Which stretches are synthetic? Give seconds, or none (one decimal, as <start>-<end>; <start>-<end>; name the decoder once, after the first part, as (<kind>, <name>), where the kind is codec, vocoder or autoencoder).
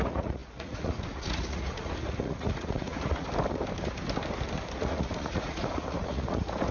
0.0-3.3 (vocoder, Vocos); 4.8-6.7